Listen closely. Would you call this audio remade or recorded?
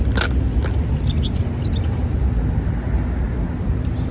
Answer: recorded